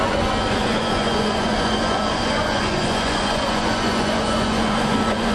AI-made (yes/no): yes